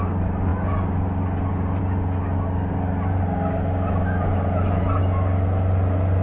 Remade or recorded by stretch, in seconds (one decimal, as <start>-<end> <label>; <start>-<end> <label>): 0.0-6.2 recorded